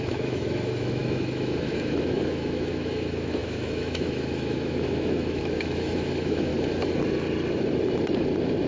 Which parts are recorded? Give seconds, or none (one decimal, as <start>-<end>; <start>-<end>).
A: 6.5-8.7